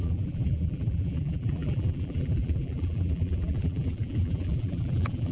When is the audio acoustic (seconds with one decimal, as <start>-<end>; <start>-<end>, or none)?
none